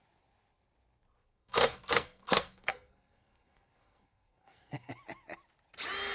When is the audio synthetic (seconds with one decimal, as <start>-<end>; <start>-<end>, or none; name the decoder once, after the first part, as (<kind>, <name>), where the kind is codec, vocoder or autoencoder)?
1.2-4.9 (codec, SNAC)